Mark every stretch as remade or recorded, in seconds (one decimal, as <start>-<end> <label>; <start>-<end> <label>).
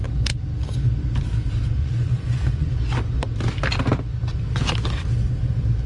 0.0-1.8 recorded; 1.8-2.7 remade; 2.7-5.9 recorded